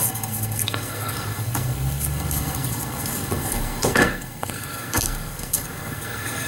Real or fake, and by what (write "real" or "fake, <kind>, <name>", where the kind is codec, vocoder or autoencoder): fake, codec, SNAC